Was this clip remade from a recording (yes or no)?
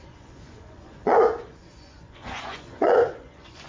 yes